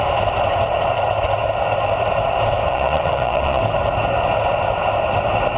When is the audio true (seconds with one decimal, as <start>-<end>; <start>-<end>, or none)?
0.0-2.7; 3.6-5.6